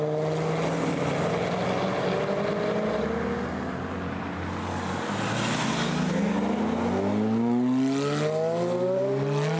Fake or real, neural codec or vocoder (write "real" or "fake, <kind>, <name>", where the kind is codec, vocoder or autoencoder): real